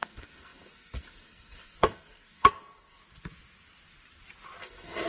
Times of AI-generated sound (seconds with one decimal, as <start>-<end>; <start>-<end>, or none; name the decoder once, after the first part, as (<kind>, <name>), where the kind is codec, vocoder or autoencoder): 0.0-3.0 (codec, SNAC); 4.6-5.1